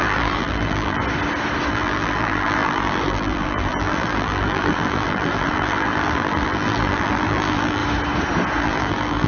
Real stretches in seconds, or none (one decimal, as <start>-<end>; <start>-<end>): 1.0-1.7; 7.8-8.6